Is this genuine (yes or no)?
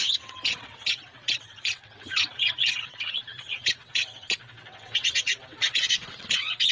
no